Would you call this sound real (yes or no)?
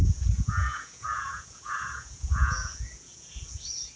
no